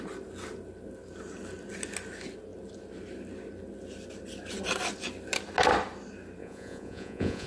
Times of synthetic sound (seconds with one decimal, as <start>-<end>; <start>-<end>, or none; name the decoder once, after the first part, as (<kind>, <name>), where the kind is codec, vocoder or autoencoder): 6.4-7.5 (vocoder, Vocos)